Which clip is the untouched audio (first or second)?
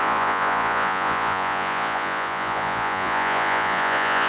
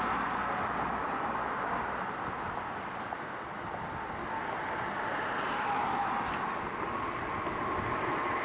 second